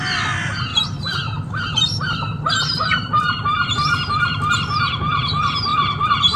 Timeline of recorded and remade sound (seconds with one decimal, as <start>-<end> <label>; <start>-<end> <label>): 0.0-0.7 recorded; 0.7-4.5 remade; 4.5-5.7 recorded; 5.7-6.4 remade

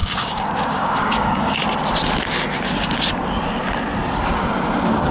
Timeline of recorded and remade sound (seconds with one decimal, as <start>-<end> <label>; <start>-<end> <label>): 0.0-1.6 remade; 1.6-5.1 recorded

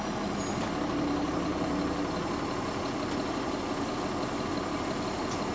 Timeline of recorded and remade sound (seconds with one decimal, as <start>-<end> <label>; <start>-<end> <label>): 0.0-5.5 recorded

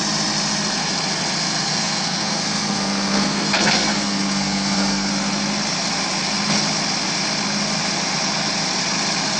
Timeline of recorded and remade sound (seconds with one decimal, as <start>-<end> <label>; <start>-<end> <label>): 0.0-1.7 recorded; 1.7-5.1 remade; 5.1-9.4 recorded

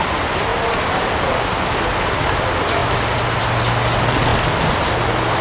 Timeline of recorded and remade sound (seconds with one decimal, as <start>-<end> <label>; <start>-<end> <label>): 0.0-5.4 recorded